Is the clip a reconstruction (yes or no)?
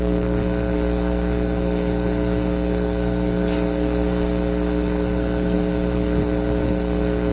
yes